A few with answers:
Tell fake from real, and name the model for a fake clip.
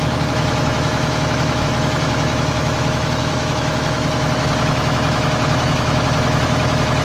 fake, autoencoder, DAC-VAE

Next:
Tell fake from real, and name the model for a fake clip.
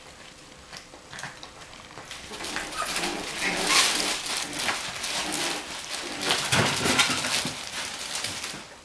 real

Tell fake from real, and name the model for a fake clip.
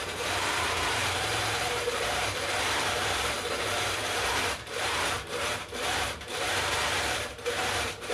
fake, vocoder, BigVGAN v2